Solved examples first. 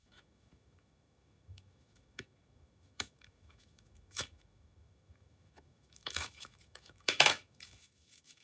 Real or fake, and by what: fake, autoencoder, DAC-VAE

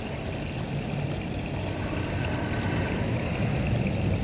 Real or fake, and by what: real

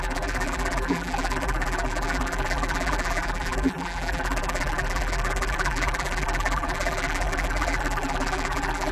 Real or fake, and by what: fake, vocoder, BigVGAN v2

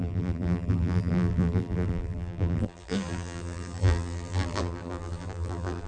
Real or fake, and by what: fake, vocoder, BigVGAN v2